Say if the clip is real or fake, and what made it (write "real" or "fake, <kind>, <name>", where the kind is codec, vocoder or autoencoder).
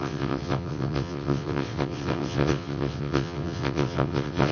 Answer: fake, vocoder, WaveNeXt